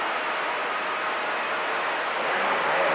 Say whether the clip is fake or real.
real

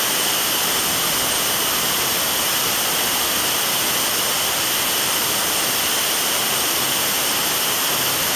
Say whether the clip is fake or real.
real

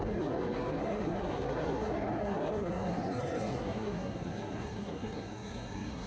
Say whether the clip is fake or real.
fake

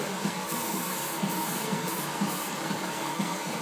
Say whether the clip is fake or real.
fake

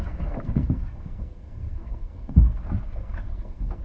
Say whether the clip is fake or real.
fake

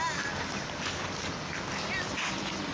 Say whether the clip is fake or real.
real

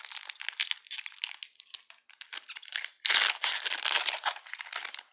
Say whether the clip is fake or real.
real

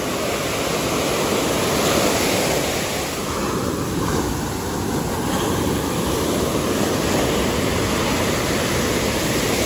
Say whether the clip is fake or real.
real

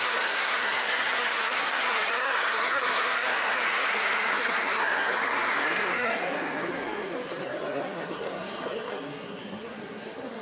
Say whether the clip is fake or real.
fake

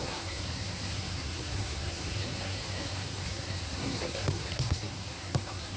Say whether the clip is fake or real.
fake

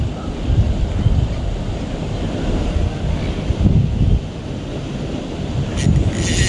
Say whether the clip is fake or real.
real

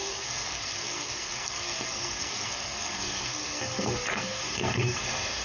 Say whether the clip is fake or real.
fake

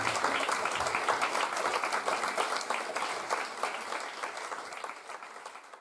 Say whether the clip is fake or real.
real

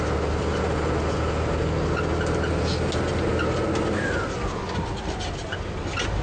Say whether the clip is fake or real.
real